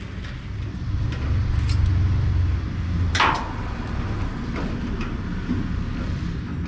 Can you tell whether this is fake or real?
real